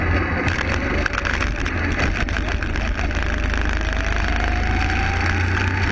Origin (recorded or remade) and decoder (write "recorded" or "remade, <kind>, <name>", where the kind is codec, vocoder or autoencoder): recorded